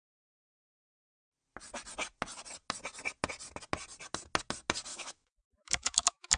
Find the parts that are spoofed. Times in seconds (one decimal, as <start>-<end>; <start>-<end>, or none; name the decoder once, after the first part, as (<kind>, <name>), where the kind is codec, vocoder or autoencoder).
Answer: 4.9-6.4 (autoencoder, DAC-VAE)

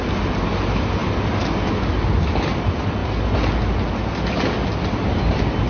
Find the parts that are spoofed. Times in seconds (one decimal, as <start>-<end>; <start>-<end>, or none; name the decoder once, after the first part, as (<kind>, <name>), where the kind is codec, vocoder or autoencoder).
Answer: none

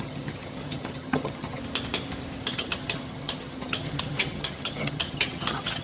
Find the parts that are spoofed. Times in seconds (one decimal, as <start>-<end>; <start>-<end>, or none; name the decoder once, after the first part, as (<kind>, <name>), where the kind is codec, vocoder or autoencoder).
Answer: 0.0-1.6 (vocoder, HiFi-GAN); 2.4-5.8

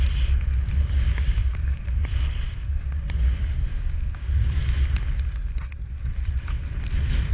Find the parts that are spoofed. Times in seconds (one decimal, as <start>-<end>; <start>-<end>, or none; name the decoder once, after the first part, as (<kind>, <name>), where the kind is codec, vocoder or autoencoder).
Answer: 1.1-1.8 (codec, DAC); 3.7-4.6

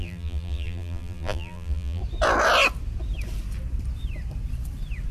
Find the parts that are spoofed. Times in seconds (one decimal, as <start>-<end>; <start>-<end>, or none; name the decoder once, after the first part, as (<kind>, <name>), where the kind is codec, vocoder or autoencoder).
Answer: 0.0-2.0 (vocoder, BigVGAN v2)

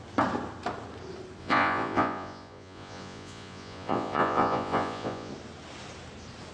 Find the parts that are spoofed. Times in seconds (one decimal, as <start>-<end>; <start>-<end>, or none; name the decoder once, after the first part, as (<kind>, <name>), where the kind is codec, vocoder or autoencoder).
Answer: 1.4-5.3 (vocoder, Vocos)

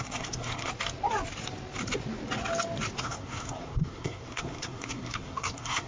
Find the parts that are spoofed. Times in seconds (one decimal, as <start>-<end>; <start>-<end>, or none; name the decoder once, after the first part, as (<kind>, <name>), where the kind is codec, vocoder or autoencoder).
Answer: 0.0-0.7 (codec, SNAC); 3.0-5.9